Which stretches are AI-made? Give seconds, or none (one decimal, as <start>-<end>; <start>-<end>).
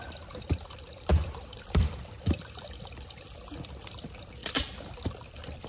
1.1-2.4; 4.4-5.7